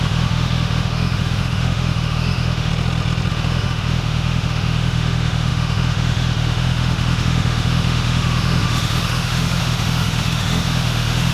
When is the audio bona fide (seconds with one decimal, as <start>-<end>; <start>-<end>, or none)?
2.7-3.3